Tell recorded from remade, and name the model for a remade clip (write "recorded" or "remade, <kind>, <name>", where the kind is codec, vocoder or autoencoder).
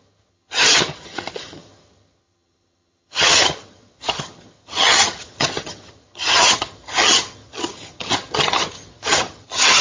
remade, vocoder, HiFi-GAN